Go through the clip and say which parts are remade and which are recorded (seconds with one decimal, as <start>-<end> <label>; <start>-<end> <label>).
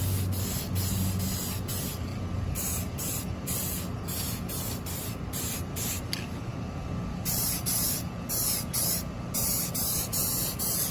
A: 0.0-10.9 recorded